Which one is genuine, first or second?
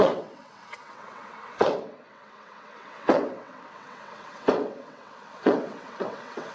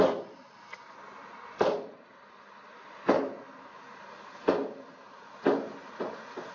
second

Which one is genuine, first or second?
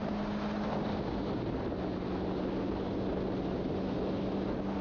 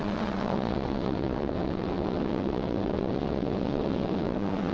first